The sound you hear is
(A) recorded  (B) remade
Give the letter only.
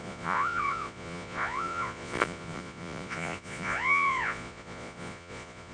B